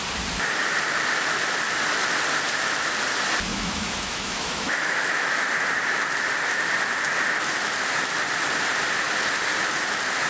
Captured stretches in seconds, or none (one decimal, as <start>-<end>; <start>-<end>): 0.0-3.5; 5.5-10.3